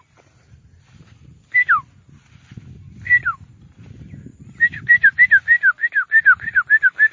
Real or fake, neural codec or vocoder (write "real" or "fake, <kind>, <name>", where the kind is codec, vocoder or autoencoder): real